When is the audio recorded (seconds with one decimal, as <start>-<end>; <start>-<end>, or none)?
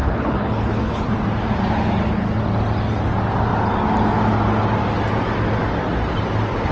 1.1-6.7